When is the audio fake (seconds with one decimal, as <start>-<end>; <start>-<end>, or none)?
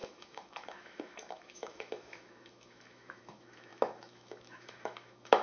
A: 0.0-5.4